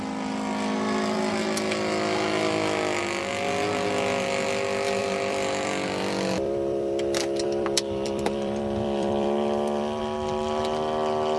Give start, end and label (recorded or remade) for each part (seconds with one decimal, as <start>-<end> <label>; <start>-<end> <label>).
0.0-5.0 recorded; 5.0-10.0 remade; 10.0-11.4 recorded